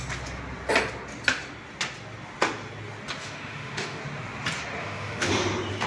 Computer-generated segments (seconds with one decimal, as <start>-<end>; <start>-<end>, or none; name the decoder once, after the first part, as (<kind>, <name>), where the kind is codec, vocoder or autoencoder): 3.2-4.0 (autoencoder, DAC-VAE); 4.8-5.3